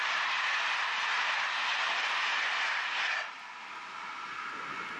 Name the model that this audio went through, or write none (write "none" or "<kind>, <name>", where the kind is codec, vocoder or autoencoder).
none